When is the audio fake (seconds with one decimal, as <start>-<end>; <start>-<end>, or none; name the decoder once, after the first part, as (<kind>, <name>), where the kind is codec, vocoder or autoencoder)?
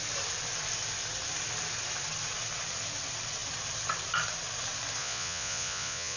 5.0-6.2 (vocoder, Vocos)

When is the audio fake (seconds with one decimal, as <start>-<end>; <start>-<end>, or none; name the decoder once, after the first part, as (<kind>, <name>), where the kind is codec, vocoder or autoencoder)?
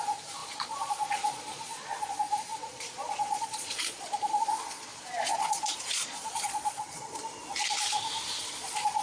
0.0-7.4 (vocoder, Vocos); 8.4-9.0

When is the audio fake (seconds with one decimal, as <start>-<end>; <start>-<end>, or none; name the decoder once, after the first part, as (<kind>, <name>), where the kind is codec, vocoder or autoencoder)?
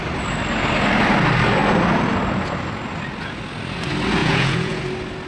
4.2-4.8 (vocoder, Vocos)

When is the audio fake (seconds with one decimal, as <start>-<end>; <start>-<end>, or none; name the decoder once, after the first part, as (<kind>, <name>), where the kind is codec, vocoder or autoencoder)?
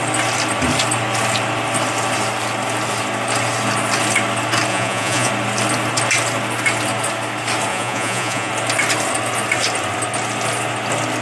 4.7-5.3 (vocoder, Vocos); 7.7-8.5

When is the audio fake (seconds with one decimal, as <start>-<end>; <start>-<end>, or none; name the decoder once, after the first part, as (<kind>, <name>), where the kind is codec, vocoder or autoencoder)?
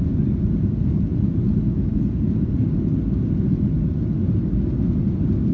1.1-2.5 (vocoder, Vocos)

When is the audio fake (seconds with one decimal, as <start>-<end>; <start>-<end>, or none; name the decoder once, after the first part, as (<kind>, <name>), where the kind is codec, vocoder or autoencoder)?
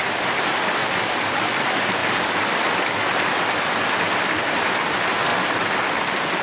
none